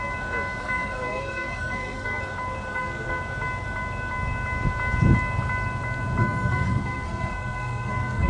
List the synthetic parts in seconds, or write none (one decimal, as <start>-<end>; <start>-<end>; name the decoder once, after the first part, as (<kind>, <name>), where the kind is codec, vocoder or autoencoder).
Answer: 0.6-2.2 (codec, SNAC); 2.7-3.2; 6.2-8.3